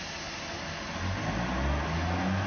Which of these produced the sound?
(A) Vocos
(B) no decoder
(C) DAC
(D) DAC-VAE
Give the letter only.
B